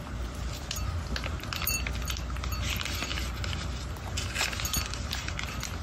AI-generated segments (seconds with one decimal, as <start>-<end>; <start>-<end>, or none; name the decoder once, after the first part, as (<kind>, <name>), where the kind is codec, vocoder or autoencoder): none